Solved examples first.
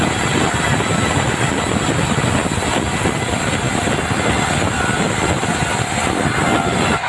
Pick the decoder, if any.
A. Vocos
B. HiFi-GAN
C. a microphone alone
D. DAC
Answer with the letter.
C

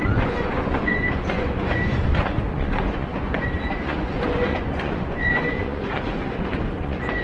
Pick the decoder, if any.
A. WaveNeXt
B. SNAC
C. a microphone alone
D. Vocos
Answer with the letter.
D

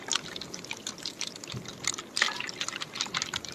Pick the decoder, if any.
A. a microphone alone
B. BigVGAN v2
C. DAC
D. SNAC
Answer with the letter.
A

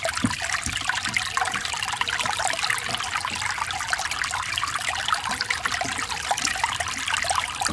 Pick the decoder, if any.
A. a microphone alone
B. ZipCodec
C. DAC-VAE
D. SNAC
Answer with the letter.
A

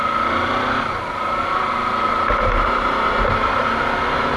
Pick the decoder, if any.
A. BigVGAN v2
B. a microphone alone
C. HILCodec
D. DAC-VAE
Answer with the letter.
B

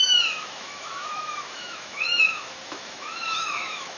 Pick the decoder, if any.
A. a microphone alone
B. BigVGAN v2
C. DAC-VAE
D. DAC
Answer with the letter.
C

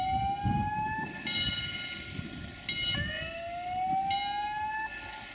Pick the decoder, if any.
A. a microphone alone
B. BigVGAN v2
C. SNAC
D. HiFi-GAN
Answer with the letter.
A